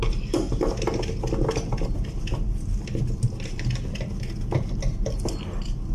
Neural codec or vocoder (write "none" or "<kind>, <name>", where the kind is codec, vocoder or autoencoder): none